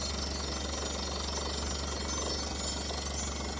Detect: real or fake real